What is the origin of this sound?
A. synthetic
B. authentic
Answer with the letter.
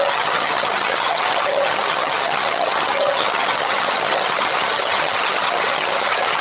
A